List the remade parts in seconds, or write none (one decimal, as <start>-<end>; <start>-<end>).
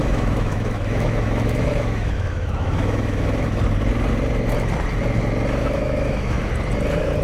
0.0-3.6; 5.6-6.5